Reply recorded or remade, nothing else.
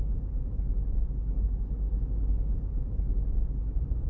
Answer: recorded